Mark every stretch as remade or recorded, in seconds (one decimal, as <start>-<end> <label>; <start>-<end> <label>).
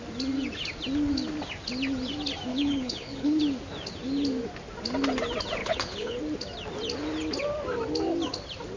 0.0-2.5 recorded; 2.5-3.4 remade; 3.4-5.6 recorded; 5.6-6.2 remade; 6.2-8.8 recorded